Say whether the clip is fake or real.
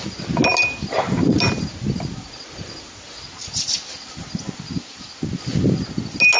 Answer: real